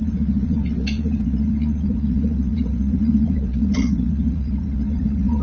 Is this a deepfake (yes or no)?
yes